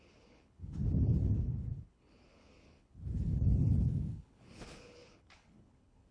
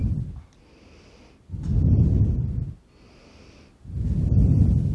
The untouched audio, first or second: second